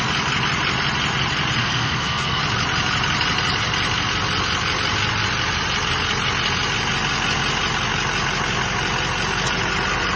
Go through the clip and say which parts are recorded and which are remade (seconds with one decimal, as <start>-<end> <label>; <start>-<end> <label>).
0.0-1.6 recorded; 1.6-2.4 remade; 2.4-10.2 recorded